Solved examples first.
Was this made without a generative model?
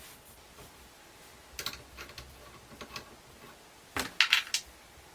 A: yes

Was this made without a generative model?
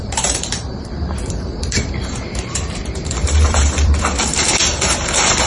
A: no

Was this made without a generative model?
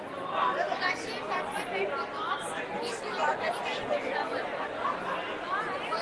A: yes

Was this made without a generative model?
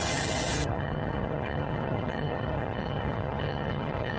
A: no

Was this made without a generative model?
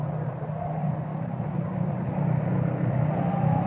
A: yes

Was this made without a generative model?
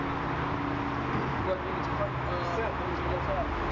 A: yes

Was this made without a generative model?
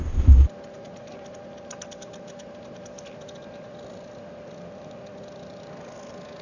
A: yes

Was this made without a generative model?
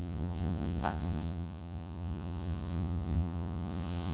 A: no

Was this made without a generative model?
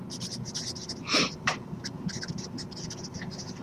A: yes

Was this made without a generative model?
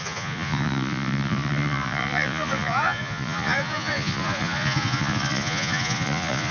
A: no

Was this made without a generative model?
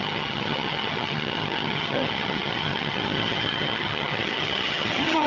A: no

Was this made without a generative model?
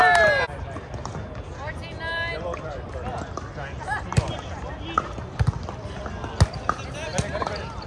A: yes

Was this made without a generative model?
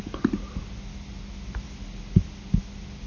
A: yes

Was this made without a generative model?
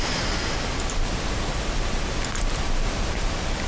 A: yes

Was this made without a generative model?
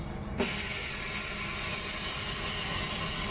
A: yes